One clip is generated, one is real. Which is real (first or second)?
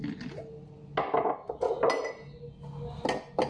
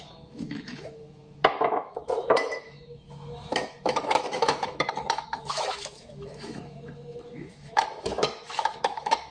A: first